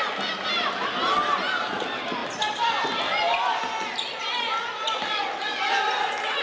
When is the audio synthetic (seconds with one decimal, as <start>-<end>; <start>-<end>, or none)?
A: none